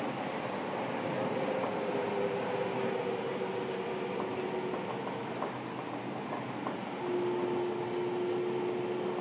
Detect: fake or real real